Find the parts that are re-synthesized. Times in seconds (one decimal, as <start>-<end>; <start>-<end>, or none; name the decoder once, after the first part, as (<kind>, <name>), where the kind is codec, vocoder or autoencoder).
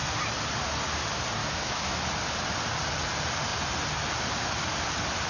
1.4-1.9 (autoencoder, DAC-VAE)